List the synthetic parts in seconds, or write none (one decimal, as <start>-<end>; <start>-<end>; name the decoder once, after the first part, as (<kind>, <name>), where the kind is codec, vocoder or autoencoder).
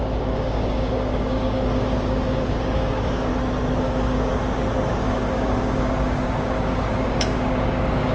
0.0-3.3 (codec, DAC); 3.8-4.3; 4.9-8.1